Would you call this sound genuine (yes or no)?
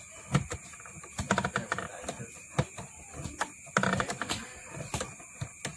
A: yes